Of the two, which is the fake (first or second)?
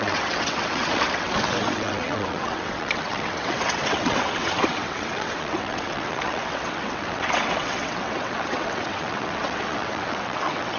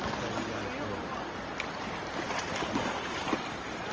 first